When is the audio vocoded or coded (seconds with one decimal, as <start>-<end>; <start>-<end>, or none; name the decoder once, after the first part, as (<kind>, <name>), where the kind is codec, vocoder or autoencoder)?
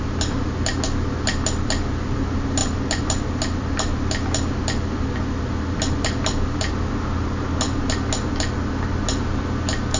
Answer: none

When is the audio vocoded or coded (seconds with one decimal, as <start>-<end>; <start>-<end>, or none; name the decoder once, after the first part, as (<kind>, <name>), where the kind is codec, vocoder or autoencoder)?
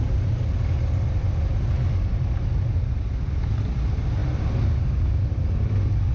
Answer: none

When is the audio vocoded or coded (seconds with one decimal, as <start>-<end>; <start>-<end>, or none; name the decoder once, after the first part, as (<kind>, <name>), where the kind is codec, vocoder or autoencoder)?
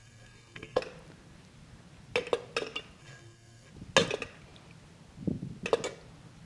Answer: 0.0-0.8 (codec, SNAC); 3.0-3.7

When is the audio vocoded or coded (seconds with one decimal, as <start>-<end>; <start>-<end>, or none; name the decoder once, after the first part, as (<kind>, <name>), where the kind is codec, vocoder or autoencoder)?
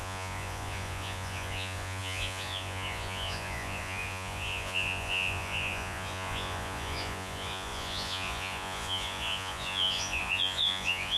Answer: 0.0-11.2 (vocoder, Vocos)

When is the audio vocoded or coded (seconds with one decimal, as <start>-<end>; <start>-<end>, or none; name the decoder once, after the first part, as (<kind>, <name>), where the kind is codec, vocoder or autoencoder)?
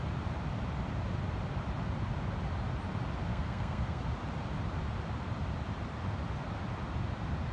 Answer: 3.3-4.0 (codec, SNAC)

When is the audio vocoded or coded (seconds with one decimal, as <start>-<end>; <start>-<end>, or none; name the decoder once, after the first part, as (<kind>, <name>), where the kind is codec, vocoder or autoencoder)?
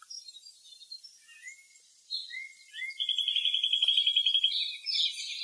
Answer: 1.7-2.7 (vocoder, Vocos)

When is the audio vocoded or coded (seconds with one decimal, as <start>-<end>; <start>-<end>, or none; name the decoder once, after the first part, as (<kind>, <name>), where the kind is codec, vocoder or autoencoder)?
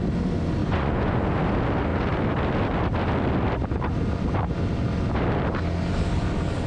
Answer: 0.6-1.2 (vocoder, Vocos)